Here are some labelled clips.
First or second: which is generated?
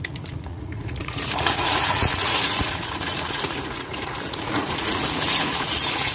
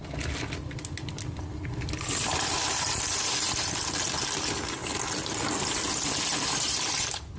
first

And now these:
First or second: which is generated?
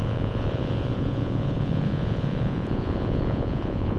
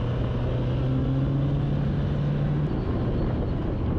first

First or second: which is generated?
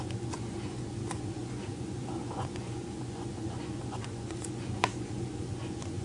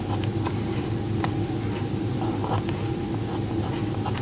first